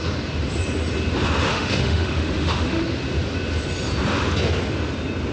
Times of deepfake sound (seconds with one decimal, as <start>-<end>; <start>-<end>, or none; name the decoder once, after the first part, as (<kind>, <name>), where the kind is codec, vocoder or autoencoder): 1.5-2.8 (autoencoder, DAC-VAE)